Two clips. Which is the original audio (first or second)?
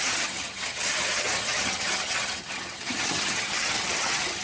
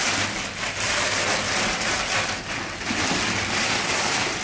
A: second